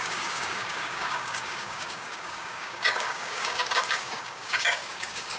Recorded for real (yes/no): no